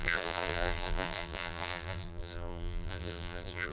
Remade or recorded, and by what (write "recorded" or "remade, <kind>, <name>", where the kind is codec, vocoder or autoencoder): remade, vocoder, BigVGAN v2